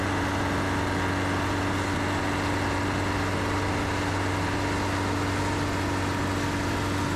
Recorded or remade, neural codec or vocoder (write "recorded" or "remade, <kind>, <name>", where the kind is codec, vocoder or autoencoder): recorded